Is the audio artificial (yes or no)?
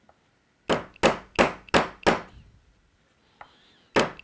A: no